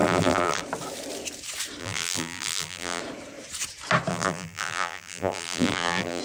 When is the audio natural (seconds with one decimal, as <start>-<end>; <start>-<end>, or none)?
0.6-1.8; 3.0-4.1